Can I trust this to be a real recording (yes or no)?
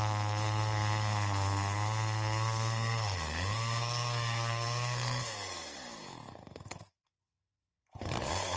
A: no